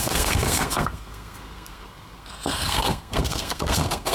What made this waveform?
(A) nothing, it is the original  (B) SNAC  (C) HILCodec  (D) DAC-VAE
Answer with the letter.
B